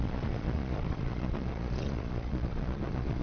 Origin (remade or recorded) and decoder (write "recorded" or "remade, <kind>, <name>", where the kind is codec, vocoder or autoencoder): remade, vocoder, Vocos